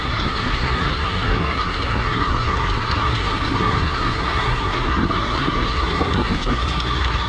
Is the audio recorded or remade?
remade